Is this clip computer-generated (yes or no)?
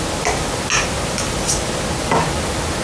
no